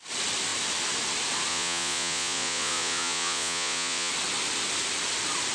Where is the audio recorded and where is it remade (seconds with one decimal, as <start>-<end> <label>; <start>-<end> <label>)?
0.0-1.5 recorded; 1.5-4.1 remade; 4.1-5.5 recorded